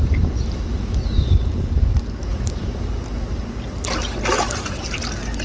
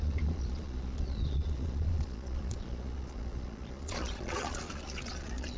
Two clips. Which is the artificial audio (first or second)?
second